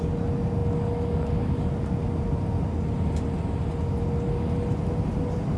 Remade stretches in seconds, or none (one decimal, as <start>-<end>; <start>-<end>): none